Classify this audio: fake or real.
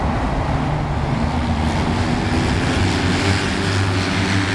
real